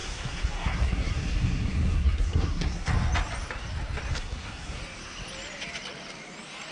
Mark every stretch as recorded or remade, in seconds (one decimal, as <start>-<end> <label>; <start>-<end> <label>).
0.0-2.9 remade; 2.9-4.1 recorded; 4.1-4.8 remade; 4.8-6.7 recorded